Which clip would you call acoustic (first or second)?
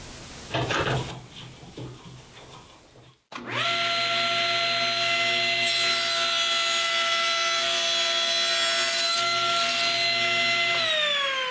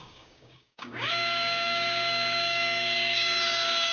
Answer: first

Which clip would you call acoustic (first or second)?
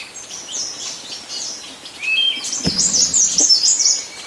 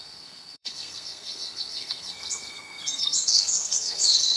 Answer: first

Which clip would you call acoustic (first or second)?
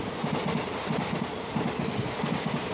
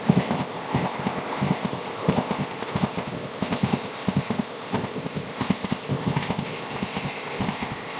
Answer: first